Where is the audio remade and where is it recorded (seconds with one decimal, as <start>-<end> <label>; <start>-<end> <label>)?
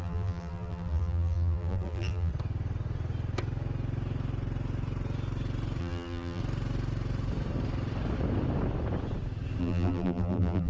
0.0-2.3 remade; 2.3-5.8 recorded; 5.8-6.4 remade; 6.4-9.6 recorded; 9.6-10.7 remade